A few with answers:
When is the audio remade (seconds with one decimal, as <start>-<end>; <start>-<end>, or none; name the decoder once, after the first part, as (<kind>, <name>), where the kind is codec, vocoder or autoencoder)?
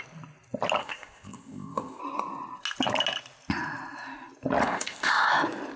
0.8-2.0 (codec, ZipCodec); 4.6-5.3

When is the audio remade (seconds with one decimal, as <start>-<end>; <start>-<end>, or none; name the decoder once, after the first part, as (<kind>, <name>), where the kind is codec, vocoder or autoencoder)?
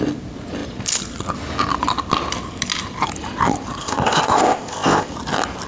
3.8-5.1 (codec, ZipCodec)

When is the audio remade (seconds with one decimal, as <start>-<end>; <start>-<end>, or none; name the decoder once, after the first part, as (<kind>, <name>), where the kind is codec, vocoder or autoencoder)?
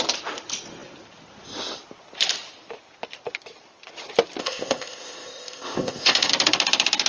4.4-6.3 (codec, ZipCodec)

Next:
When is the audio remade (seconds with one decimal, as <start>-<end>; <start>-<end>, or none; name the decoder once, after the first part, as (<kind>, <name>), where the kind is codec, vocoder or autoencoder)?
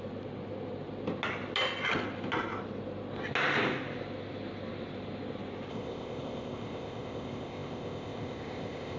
5.7-9.0 (codec, ZipCodec)